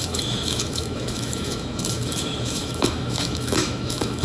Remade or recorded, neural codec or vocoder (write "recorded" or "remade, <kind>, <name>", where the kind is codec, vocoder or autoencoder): remade, autoencoder, DAC-VAE